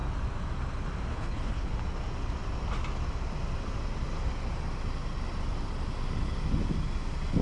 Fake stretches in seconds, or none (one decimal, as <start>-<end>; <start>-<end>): 1.1-1.7